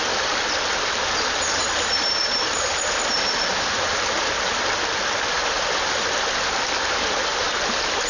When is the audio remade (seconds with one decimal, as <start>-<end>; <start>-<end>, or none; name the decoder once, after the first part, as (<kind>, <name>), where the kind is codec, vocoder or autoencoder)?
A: 1.6-4.3 (vocoder, BigVGAN v2)